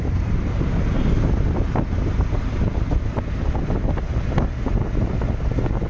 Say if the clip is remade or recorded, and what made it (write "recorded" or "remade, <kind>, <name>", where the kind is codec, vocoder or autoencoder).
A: recorded